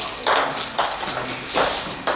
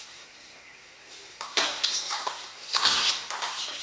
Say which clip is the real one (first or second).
first